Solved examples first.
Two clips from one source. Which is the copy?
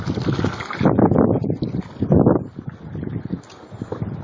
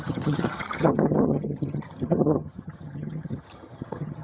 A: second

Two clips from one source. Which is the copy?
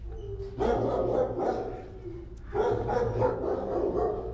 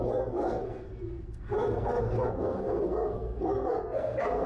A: second